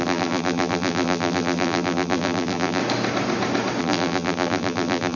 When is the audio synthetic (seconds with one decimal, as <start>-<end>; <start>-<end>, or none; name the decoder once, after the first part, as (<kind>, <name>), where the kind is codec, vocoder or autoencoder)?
0.0-2.8 (vocoder, BigVGAN v2); 3.8-5.2